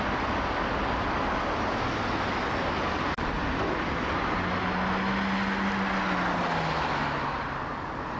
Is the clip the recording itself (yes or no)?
yes